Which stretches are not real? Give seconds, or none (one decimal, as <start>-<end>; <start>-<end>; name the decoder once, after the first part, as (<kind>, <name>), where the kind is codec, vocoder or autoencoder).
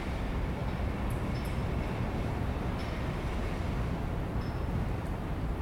0.0-0.6 (vocoder, BigVGAN v2); 2.2-2.8; 3.7-5.6